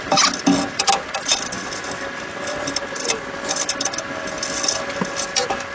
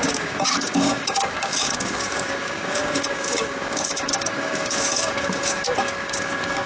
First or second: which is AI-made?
second